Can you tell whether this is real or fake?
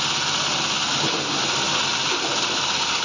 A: real